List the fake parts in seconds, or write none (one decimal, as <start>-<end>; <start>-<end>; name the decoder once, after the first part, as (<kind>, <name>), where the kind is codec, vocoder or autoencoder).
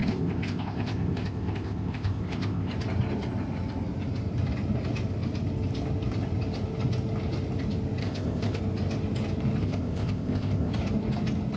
0.0-2.7 (codec, ZipCodec); 8.0-8.6; 9.6-10.7